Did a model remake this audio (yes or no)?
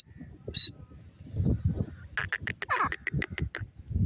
no